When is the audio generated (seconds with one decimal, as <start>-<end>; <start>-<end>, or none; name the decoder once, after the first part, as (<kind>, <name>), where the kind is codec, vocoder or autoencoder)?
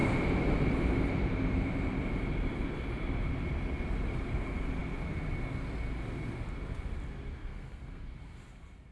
7.4-8.0 (codec, SNAC)